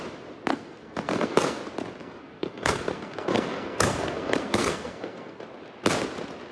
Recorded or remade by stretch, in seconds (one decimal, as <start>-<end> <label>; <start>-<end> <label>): 0.0-0.5 recorded; 0.5-1.6 remade; 1.6-2.0 recorded; 2.0-5.4 remade; 5.4-6.5 recorded